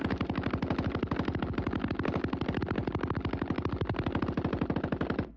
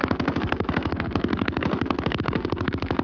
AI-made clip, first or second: second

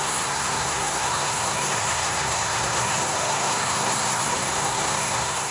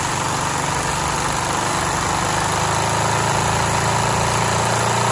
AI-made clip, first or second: first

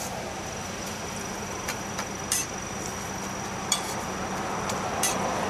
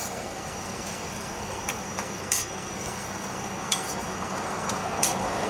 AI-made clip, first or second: second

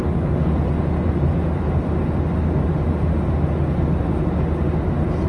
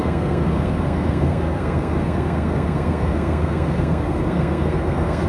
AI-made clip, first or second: second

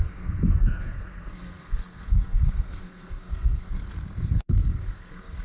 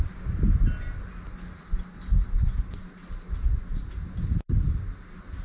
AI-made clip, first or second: first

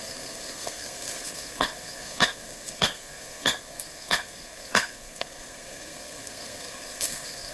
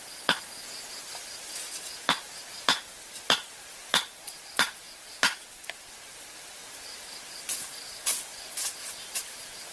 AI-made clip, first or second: first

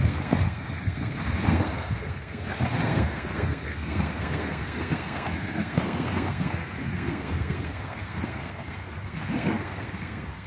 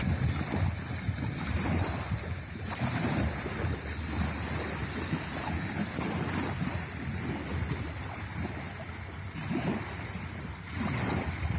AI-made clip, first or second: first